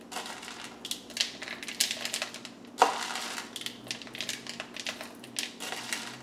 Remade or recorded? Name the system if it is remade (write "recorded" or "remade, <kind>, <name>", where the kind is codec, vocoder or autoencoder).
recorded